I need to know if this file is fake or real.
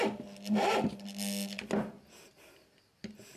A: real